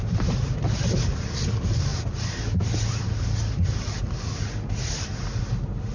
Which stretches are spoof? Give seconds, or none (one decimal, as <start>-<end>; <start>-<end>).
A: none